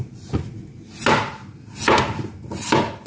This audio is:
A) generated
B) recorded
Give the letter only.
B